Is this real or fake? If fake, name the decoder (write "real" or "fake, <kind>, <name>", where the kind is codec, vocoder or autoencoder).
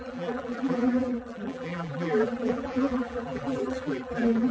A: fake, vocoder, BigVGAN v2